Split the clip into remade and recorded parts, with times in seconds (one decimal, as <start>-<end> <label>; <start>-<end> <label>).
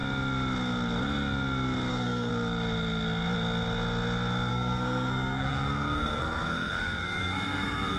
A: 0.0-1.9 recorded; 1.9-2.3 remade; 2.3-4.5 recorded; 4.5-8.0 remade